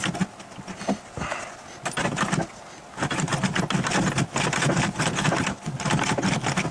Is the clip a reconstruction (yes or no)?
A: no